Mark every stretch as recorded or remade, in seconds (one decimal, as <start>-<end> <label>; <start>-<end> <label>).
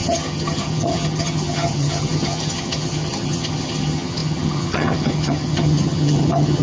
0.0-6.6 remade